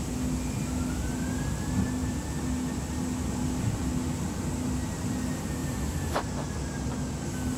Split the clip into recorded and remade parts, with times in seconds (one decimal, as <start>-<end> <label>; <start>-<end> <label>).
0.0-7.6 recorded

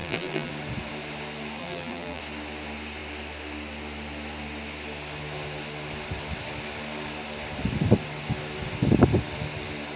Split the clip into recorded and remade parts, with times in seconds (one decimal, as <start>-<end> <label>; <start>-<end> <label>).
0.0-0.5 remade; 0.5-1.6 recorded; 1.6-2.2 remade; 2.2-10.0 recorded

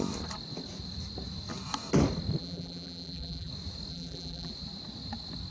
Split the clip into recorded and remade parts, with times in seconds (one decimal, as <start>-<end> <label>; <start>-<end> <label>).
0.0-2.4 recorded; 2.4-3.5 remade; 3.5-3.9 recorded; 3.9-4.5 remade; 4.5-5.5 recorded

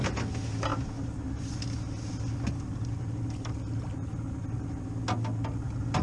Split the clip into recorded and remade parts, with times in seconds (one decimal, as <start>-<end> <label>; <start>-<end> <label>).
0.0-6.0 recorded

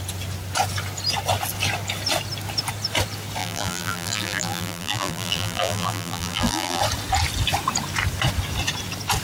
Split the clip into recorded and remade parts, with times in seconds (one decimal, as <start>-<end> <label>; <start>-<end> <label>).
0.0-3.4 recorded; 3.4-6.8 remade; 6.8-9.2 recorded

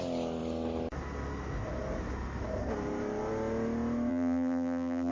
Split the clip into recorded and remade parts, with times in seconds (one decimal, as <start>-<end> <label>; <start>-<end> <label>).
0.0-4.1 recorded; 4.1-5.1 remade